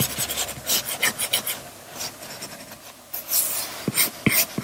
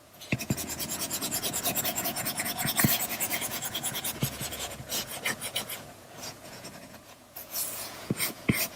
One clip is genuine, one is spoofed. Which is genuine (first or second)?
first